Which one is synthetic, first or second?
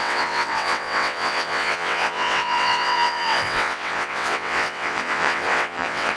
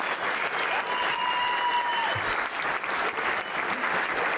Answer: first